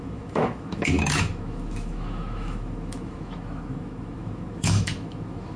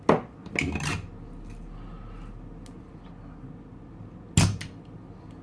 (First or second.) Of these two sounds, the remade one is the first